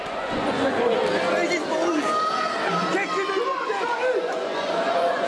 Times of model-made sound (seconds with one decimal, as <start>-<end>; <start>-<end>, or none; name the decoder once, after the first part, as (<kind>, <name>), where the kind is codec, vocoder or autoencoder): 0.0-1.0 (vocoder, Vocos); 4.2-5.3